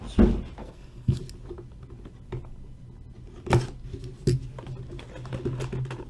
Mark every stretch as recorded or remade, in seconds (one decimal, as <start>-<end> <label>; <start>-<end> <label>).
0.0-0.6 recorded; 0.6-1.2 remade; 1.2-6.1 recorded